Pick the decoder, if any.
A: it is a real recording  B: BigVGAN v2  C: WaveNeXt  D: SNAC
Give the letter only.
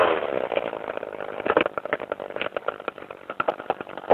A